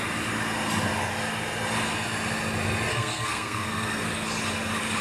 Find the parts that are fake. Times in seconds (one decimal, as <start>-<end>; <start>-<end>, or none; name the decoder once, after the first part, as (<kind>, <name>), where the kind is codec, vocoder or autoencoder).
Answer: 2.9-4.1 (codec, SNAC)